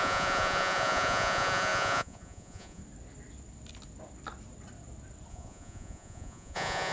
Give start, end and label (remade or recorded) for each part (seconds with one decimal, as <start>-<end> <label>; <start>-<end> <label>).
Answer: 0.0-2.8 remade; 2.8-5.3 recorded; 5.3-6.9 remade